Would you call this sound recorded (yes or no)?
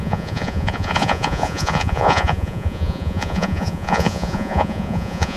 no